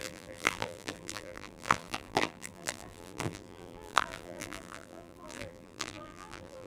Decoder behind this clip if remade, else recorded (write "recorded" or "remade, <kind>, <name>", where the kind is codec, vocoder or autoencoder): remade, vocoder, BigVGAN v2